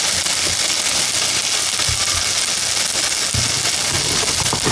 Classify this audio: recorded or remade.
recorded